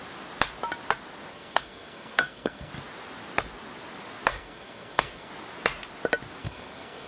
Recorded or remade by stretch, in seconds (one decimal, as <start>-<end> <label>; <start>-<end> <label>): 0.0-1.3 recorded; 1.3-2.7 remade; 2.7-4.3 recorded; 4.3-5.3 remade; 5.3-6.4 recorded; 6.4-7.1 remade